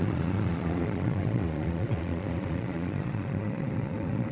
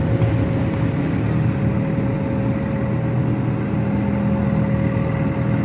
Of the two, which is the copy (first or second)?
first